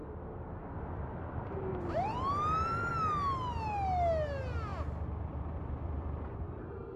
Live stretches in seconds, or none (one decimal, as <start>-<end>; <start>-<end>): 2.9-4.7; 6.3-7.0

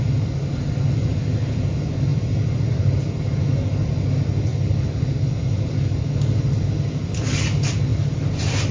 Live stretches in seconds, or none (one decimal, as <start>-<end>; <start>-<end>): 0.0-2.1; 2.8-4.5; 6.1-7.9

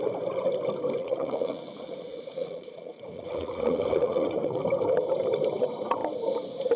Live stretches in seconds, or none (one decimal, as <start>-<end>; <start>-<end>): 0.0-1.0; 4.6-6.8

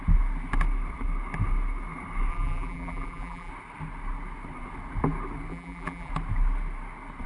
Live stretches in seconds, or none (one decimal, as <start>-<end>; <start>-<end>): 0.0-2.3; 3.5-5.5; 6.1-7.3